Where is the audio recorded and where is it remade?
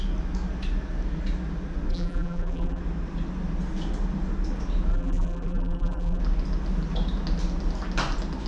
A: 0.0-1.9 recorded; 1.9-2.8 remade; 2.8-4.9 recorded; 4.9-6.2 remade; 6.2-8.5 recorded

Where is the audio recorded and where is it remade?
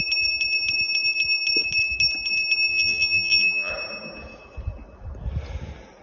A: 0.0-2.7 recorded; 2.7-3.7 remade; 3.7-6.0 recorded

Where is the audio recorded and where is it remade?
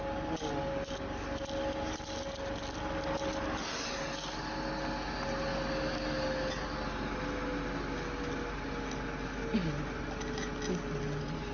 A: 0.0-11.5 recorded